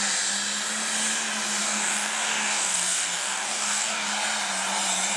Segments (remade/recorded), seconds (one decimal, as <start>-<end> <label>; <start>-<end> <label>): 0.0-1.6 recorded; 1.6-4.1 remade; 4.1-5.2 recorded